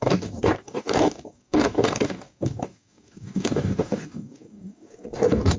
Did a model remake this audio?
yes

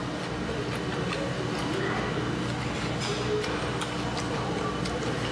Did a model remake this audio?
no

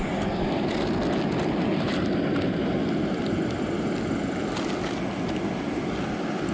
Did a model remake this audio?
no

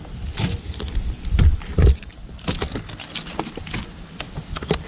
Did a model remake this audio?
no